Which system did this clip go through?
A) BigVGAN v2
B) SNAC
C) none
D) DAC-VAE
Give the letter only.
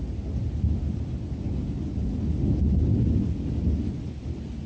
C